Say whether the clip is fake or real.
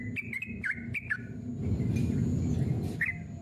real